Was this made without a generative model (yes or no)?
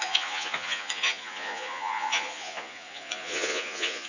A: no